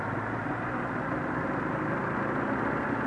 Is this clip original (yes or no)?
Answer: yes